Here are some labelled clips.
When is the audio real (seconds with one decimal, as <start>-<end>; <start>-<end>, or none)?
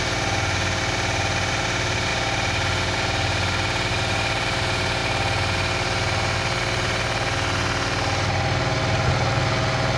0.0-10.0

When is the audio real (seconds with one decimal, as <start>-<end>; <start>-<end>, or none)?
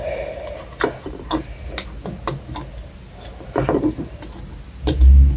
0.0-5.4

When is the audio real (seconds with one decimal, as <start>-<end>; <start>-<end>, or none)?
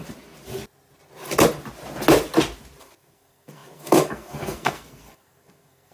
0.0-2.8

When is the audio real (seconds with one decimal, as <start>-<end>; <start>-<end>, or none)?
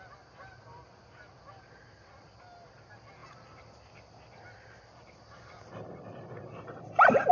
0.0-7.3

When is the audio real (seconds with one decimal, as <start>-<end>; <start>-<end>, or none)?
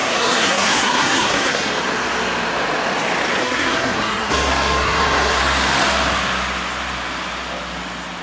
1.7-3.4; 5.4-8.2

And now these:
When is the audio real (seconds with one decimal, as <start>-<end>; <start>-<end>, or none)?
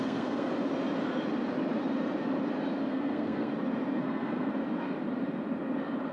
0.5-2.9; 3.5-4.0; 4.5-6.1